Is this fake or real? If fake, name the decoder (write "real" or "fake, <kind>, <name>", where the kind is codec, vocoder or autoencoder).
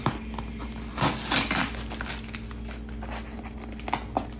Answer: real